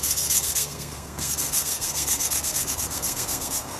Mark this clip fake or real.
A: fake